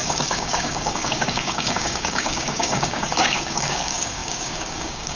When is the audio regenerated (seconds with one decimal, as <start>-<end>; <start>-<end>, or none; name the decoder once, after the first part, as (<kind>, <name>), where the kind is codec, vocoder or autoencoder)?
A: 0.0-5.2 (codec, DAC)